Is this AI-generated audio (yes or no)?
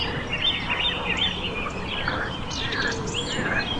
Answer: no